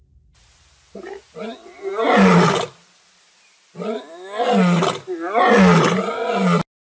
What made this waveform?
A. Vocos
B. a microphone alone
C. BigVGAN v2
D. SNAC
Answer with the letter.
B